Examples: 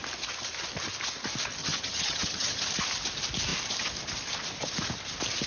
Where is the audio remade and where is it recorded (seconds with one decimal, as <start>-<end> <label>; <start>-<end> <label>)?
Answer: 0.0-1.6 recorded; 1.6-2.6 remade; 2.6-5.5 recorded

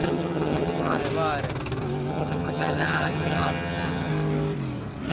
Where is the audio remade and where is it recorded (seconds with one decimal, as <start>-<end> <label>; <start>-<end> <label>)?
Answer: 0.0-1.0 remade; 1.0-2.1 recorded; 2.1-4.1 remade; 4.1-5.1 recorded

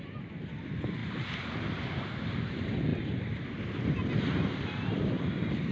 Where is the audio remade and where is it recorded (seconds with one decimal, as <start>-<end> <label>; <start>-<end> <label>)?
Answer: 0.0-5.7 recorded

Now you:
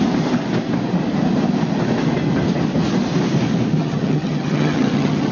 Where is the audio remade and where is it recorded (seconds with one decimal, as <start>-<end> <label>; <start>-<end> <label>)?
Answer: 0.0-3.8 recorded; 3.8-5.3 remade

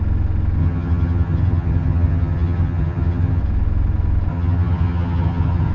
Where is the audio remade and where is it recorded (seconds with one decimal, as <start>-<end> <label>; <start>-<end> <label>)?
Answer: 0.0-0.6 recorded; 0.6-3.4 remade; 3.4-4.3 recorded; 4.3-5.7 remade

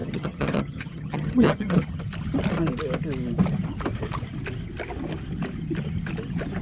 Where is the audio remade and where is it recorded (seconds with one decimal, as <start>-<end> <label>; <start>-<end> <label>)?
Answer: 0.0-2.0 remade; 2.0-6.6 recorded